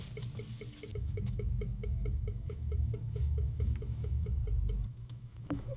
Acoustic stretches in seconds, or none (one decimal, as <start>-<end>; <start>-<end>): 0.0-0.9; 4.4-4.9